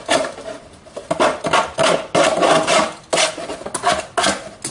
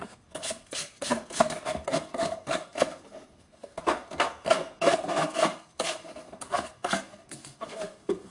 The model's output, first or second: second